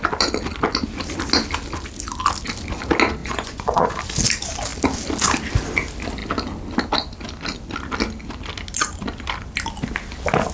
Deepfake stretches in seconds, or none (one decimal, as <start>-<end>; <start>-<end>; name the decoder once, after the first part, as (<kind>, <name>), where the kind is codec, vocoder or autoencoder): 3.2-3.9 (vocoder, Vocos)